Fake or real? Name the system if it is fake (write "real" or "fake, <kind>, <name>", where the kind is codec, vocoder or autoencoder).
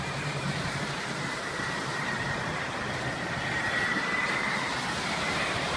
fake, vocoder, BigVGAN v2